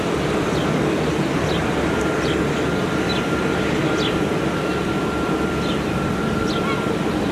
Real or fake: real